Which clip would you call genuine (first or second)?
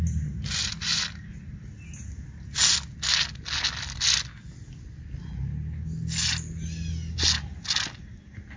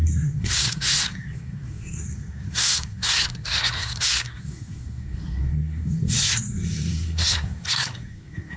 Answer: first